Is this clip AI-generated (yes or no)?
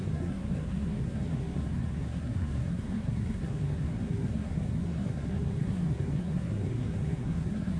yes